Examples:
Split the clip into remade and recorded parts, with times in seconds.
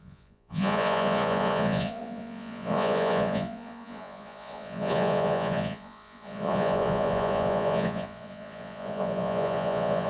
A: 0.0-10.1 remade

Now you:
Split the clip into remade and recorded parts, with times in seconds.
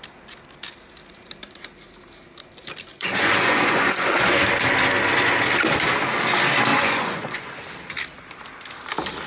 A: 0.0-2.9 recorded; 2.9-4.3 remade; 4.3-6.7 recorded; 6.7-7.6 remade; 7.6-9.3 recorded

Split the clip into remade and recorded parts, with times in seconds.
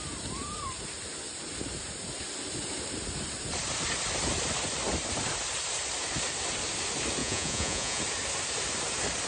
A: 0.0-7.2 recorded; 7.2-8.0 remade; 8.0-9.3 recorded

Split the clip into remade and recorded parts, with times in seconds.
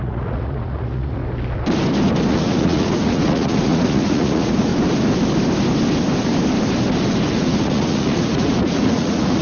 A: 0.0-1.2 remade; 1.2-2.3 recorded; 2.3-4.7 remade; 4.7-7.3 recorded; 7.3-9.4 remade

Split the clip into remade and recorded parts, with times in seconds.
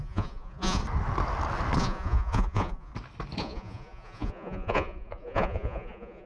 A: 0.0-0.8 remade; 0.8-1.8 recorded; 1.8-2.9 remade; 2.9-3.4 recorded; 3.4-6.3 remade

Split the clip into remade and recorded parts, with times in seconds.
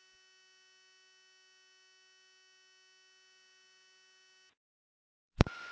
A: 0.0-4.9 recorded; 4.9-5.7 remade